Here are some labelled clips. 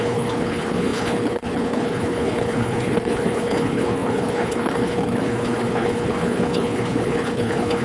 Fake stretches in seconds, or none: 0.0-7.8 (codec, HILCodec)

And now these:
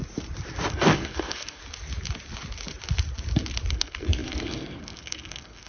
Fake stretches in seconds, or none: 0.7-1.6 (codec, SNAC); 3.7-5.7

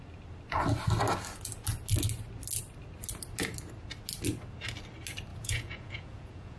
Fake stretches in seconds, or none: 5.3-6.6 (vocoder, Vocos)

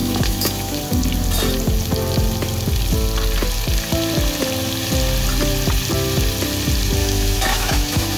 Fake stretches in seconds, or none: 0.0-0.8 (autoencoder, DAC-VAE); 7.0-8.2